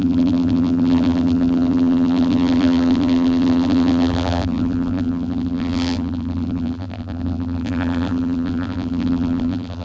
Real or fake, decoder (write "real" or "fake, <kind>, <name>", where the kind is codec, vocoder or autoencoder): fake, vocoder, BigVGAN v2